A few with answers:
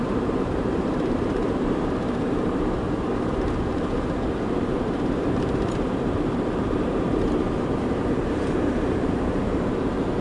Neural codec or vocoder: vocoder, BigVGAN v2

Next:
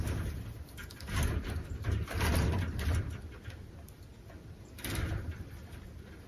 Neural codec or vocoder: none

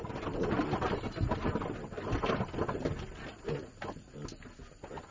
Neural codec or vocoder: none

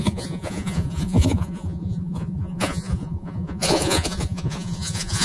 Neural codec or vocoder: vocoder, Vocos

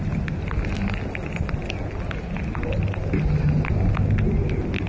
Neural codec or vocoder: none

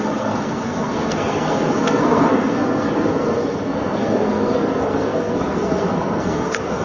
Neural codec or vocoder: codec, SNAC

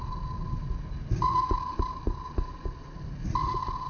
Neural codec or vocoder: none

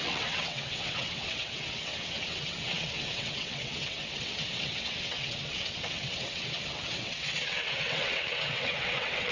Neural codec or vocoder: vocoder, WaveNeXt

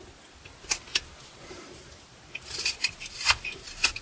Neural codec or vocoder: none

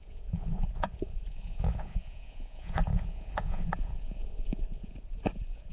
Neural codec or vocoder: vocoder, Vocos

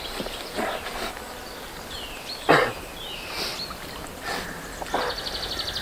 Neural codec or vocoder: none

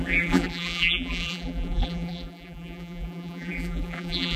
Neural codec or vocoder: vocoder, BigVGAN v2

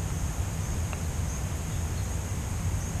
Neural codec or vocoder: none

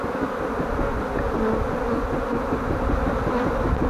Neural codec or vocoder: none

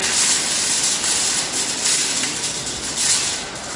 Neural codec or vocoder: none